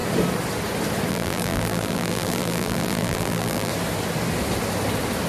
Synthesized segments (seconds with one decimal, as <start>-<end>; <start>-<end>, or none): 1.1-3.7